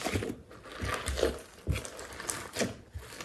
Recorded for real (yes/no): yes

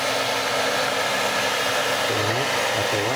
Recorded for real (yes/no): yes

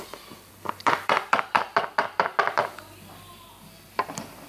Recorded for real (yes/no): no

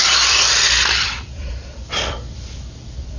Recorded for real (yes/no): no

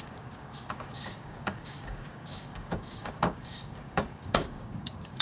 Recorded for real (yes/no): no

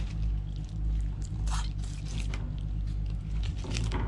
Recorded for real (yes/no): yes